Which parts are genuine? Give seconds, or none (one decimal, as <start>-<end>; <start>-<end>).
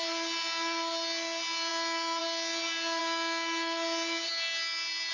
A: 0.0-5.1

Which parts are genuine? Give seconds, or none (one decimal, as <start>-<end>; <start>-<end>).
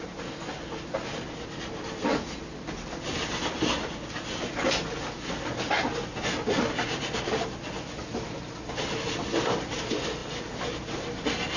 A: 0.0-11.6